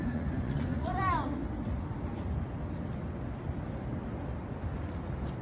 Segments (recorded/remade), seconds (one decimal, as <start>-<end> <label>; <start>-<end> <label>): 0.0-0.9 remade; 0.9-5.4 recorded

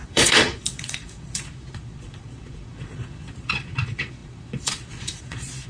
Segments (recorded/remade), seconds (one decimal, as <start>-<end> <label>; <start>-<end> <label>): 0.0-5.7 remade

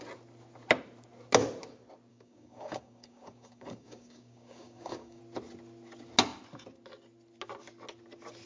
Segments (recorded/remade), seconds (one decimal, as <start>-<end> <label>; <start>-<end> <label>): 0.0-2.1 recorded; 2.1-5.2 remade; 5.2-8.5 recorded

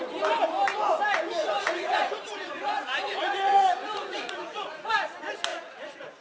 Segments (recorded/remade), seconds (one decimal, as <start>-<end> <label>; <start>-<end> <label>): 0.0-1.4 recorded; 1.4-4.9 remade; 4.9-5.5 recorded; 5.5-6.2 remade